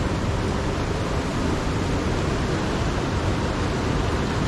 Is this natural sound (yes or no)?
yes